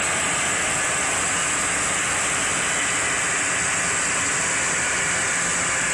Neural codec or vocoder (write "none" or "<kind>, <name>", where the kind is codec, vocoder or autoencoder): none